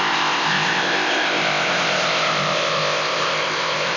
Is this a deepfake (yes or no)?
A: yes